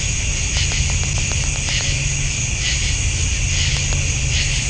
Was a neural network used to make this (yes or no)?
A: no